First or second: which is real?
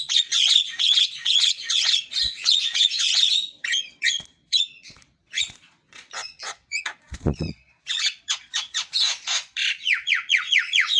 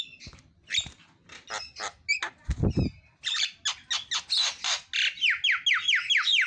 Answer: second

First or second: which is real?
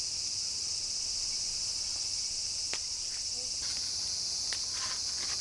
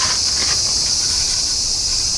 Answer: first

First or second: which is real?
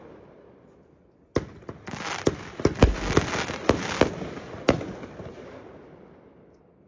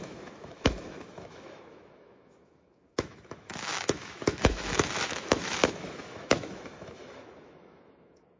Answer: first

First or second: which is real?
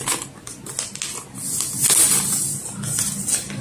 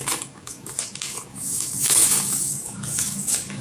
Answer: first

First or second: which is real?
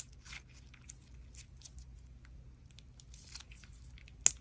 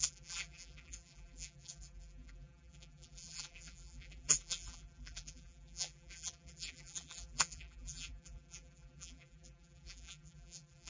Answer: first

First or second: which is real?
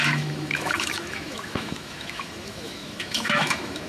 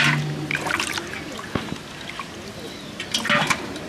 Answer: second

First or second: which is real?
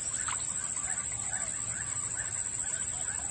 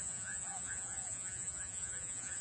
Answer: first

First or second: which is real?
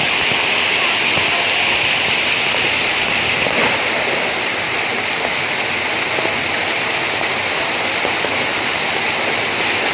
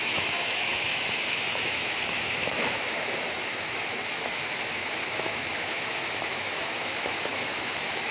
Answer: first